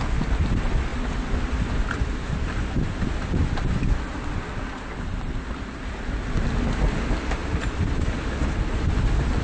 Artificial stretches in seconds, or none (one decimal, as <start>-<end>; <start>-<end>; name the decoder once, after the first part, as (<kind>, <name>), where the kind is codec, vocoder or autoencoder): none